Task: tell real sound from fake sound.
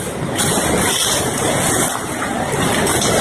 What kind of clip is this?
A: real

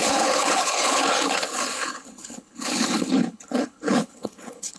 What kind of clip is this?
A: fake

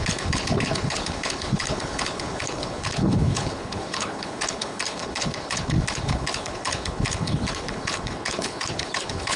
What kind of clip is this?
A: fake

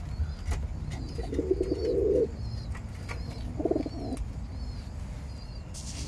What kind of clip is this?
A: real